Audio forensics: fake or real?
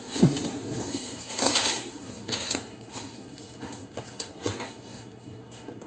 fake